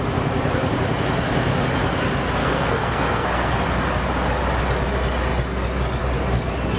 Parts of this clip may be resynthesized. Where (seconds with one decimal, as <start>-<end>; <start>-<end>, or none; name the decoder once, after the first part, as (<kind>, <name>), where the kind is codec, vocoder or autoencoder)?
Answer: 2.4-3.5 (codec, SNAC)